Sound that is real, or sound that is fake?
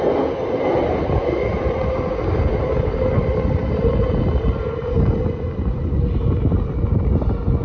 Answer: real